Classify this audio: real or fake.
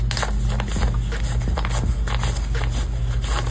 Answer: real